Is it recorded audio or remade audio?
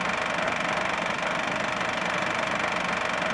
recorded